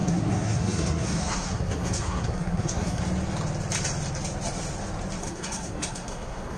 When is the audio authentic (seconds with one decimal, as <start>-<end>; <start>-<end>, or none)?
3.0-5.2